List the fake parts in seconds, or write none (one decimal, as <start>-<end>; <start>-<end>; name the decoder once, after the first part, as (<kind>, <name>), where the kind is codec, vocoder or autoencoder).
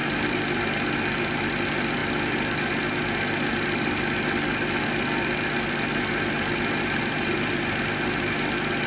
none